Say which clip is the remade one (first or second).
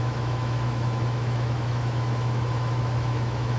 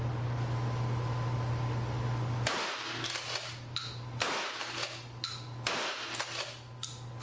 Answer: first